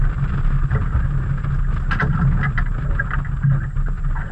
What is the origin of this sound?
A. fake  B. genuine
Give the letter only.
B